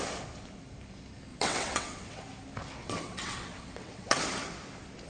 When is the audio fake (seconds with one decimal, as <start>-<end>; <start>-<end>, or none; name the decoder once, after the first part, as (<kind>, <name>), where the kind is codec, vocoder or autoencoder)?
1.3-2.2 (vocoder, WaveNeXt); 2.8-4.2